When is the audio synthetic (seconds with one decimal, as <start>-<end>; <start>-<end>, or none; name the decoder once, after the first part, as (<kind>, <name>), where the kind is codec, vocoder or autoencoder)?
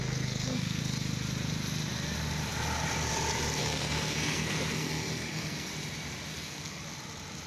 0.0-0.8 (codec, SNAC); 3.6-5.7; 6.3-6.8